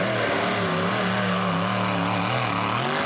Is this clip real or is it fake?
real